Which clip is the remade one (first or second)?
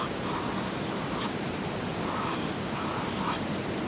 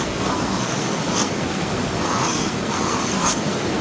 second